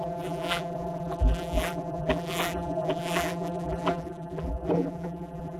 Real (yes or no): no